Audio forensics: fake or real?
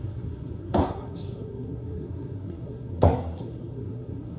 fake